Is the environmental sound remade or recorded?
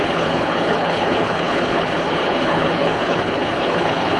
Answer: remade